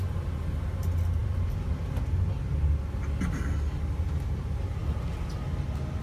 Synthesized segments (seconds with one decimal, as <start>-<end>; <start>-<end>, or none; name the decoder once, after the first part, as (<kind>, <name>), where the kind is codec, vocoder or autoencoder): 1.2-2.0 (vocoder, BigVGAN v2)

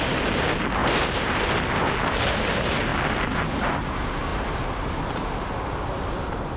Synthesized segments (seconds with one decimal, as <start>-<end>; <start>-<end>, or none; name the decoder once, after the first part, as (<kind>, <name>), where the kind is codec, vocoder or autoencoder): 0.8-1.5 (vocoder, BigVGAN v2); 4.3-5.5

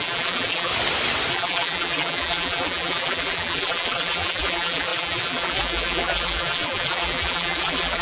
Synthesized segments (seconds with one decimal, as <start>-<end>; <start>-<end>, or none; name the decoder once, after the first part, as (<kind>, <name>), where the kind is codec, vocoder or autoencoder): 0.0-0.7 (vocoder, BigVGAN v2); 1.3-8.0

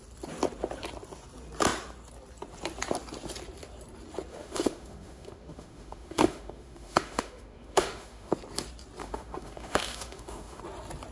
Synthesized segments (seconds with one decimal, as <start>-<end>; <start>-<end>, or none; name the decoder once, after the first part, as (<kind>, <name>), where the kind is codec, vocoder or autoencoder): 4.3-8.3 (autoencoder, DAC-VAE); 9.0-10.6